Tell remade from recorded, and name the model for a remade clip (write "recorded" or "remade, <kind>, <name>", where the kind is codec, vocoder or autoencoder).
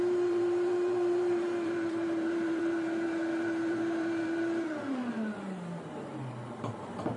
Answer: remade, vocoder, BigVGAN v2